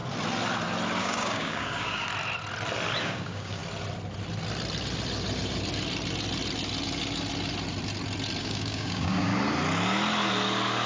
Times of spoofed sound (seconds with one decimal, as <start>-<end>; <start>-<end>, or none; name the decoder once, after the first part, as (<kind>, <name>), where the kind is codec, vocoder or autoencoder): 1.0-2.1 (codec, DAC); 3.0-3.6; 8.4-9.3